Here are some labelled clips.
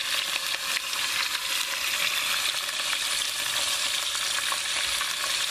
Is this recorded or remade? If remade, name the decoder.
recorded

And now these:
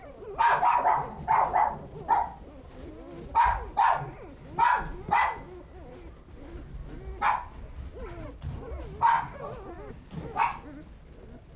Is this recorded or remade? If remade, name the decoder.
recorded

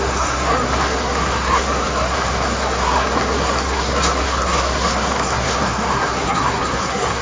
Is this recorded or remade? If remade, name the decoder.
remade, codec, SNAC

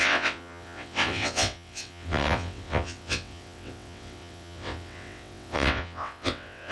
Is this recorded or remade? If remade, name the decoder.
remade, vocoder, WaveNeXt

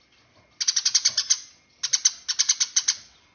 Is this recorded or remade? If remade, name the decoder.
recorded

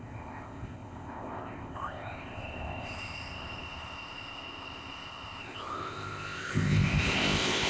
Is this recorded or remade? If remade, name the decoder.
remade, codec, ZipCodec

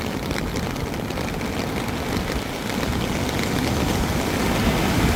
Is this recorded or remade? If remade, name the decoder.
recorded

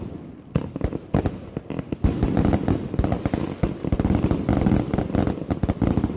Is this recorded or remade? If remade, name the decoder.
recorded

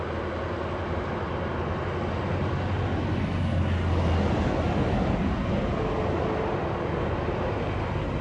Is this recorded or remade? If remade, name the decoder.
recorded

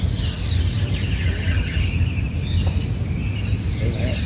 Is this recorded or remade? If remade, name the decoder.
recorded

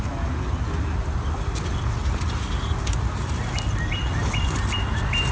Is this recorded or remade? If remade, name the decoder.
recorded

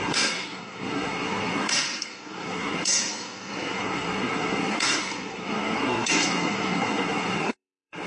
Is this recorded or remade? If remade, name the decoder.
remade, codec, SNAC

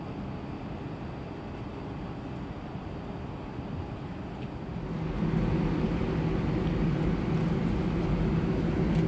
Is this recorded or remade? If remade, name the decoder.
recorded